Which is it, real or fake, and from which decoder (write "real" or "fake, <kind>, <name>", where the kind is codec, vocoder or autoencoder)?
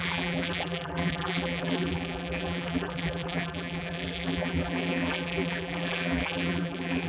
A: fake, vocoder, BigVGAN v2